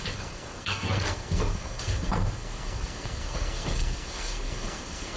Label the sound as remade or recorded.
remade